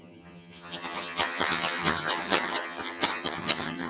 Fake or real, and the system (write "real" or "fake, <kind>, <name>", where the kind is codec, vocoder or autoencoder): fake, vocoder, HiFi-GAN